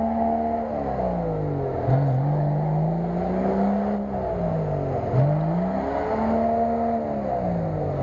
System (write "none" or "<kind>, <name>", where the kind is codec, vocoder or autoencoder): none